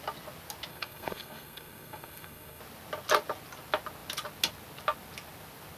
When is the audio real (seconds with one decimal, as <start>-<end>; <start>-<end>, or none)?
0.0-0.7; 2.6-5.8